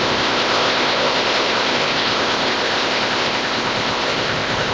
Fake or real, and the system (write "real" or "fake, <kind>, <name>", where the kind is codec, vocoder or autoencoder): fake, codec, ZipCodec